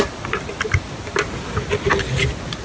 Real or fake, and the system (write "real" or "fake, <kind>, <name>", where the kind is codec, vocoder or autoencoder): real